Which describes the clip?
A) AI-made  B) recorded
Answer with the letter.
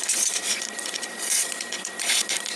A